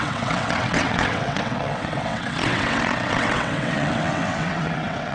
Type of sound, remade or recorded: remade